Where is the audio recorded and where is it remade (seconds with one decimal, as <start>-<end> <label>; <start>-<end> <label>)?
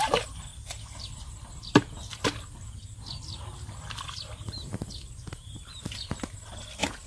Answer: 0.0-7.1 recorded